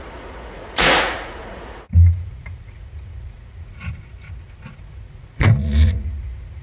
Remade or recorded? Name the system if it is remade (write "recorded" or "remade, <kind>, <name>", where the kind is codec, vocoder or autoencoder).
remade, vocoder, Vocos